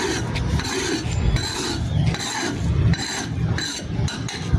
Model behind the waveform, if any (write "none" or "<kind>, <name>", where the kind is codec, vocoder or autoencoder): none